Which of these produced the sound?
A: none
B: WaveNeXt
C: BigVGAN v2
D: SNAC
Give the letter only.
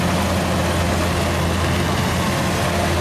A